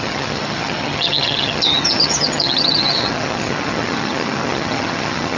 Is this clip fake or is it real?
fake